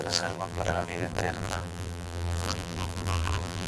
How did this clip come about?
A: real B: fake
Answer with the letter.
B